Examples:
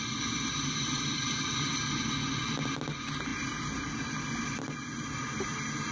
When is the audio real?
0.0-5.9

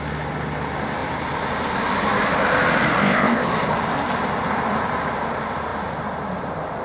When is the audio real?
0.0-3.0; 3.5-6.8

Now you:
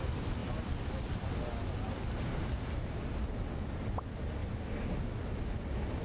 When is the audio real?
0.0-6.0

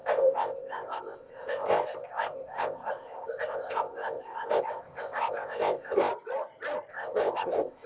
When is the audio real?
6.1-6.9

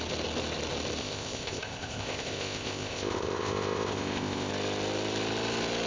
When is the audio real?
0.0-1.0; 4.5-5.9